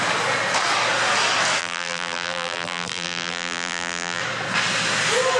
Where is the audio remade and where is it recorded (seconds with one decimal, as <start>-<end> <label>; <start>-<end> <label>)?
0.0-1.6 recorded; 1.6-4.2 remade; 4.2-5.4 recorded